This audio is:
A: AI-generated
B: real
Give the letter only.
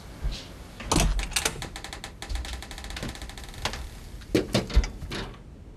B